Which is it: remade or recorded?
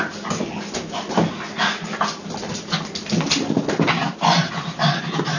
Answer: recorded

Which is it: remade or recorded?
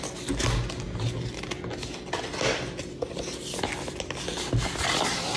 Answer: recorded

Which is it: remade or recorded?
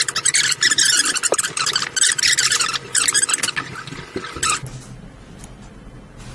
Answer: recorded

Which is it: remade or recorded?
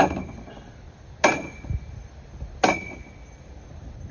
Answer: recorded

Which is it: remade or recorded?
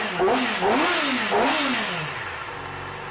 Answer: recorded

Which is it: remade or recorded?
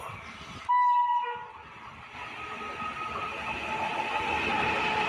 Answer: recorded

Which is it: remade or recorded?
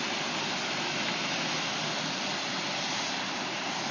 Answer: recorded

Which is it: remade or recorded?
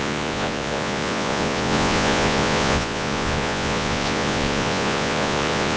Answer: remade